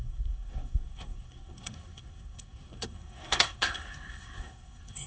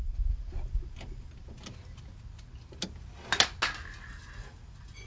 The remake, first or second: first